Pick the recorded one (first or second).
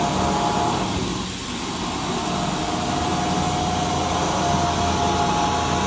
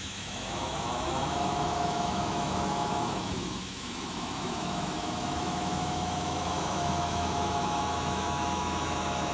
first